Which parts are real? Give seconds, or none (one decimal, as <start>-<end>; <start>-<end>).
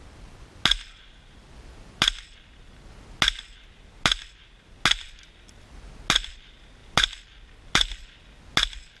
0.0-9.0